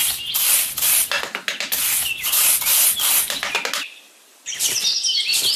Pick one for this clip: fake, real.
real